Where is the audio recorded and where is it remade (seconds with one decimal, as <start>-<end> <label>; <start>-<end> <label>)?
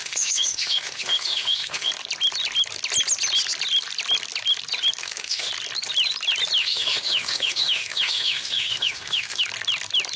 0.0-1.9 remade; 1.9-5.0 recorded; 5.0-5.5 remade; 5.5-6.6 recorded; 6.6-9.4 remade; 9.4-10.2 recorded